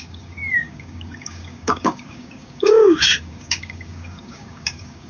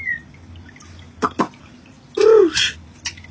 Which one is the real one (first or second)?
second